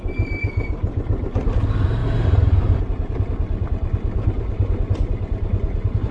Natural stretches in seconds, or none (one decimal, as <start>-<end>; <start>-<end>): 0.0-6.1